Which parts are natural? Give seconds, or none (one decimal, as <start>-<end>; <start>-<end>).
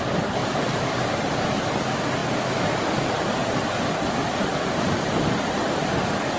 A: 0.0-0.4; 1.7-6.4